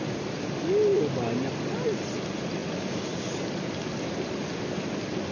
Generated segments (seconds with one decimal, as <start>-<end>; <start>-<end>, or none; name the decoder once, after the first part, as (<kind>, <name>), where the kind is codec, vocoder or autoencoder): none